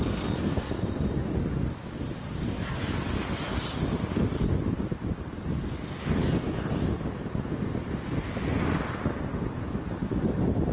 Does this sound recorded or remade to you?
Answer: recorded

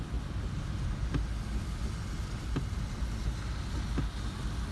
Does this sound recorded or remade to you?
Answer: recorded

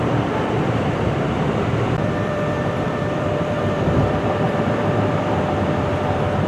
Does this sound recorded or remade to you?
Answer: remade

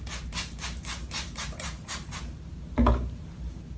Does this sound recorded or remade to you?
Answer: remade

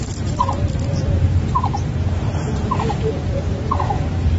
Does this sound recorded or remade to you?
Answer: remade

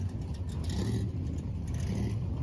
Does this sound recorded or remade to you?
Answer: recorded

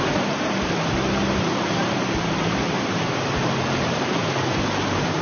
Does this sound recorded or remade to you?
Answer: remade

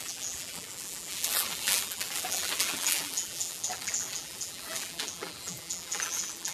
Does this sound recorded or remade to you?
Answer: remade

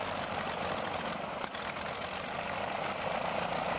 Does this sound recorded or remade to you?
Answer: remade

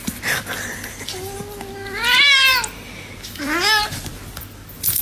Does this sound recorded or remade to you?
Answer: recorded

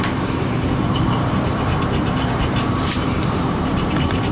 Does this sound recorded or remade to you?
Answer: remade